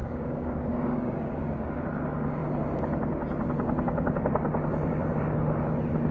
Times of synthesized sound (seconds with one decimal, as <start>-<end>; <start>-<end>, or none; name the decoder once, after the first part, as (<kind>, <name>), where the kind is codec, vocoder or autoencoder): 0.0-1.8 (codec, DAC)